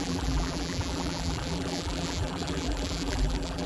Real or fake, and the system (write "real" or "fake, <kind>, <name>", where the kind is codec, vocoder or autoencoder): fake, vocoder, BigVGAN v2